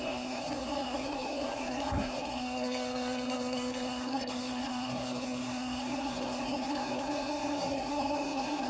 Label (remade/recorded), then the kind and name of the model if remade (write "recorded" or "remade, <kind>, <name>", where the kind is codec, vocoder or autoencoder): remade, codec, SNAC